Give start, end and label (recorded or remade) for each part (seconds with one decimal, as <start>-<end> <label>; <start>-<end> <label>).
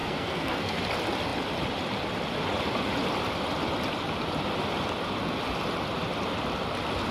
0.0-0.8 remade; 0.8-7.1 recorded